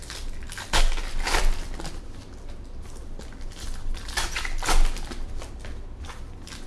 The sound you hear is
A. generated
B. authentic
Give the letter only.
B